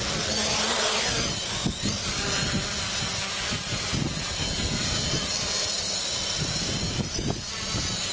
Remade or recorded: recorded